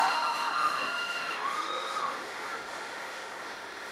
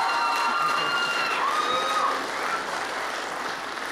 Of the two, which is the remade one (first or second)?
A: first